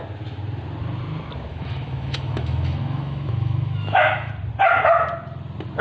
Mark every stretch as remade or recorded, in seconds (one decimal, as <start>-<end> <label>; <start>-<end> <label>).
0.0-1.5 recorded; 1.5-4.3 remade; 4.3-5.8 recorded